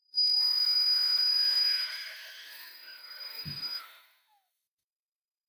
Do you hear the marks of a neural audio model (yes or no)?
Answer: yes